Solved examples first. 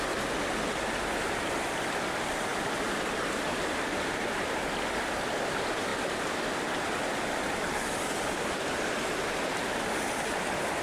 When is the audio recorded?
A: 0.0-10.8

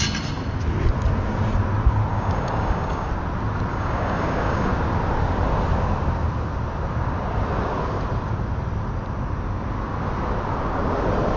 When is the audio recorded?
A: 0.0-2.1; 3.1-3.7; 4.7-11.4

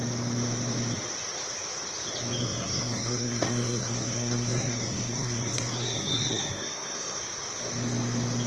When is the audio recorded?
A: 0.0-2.4; 7.2-8.5

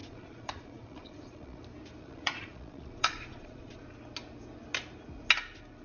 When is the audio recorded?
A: 1.6-2.0; 3.7-5.8

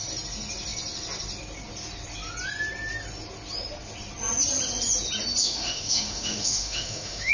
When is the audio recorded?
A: 0.0-5.4